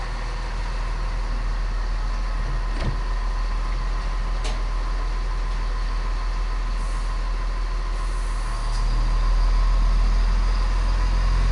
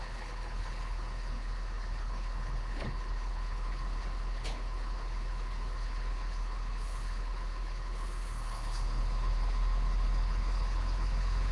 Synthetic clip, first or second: second